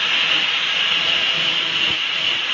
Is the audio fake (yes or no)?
yes